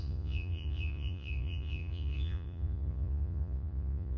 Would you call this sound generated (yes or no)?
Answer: yes